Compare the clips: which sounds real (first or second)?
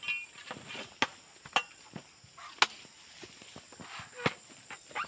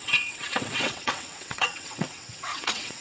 first